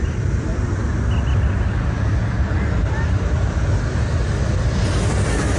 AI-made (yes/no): no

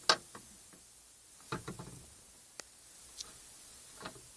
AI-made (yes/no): no